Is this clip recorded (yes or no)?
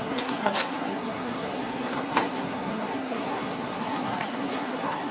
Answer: no